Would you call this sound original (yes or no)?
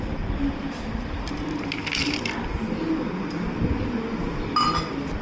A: yes